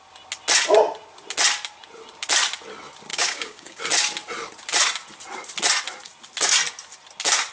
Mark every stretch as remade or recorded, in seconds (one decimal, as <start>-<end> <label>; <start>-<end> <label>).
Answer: 0.0-3.1 recorded; 3.1-3.8 remade; 3.8-7.5 recorded